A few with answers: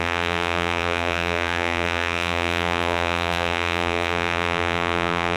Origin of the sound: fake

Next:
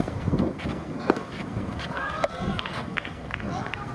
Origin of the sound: fake